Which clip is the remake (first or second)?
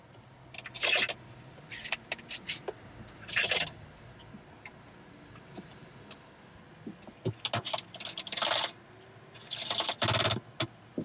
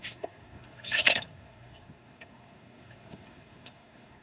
second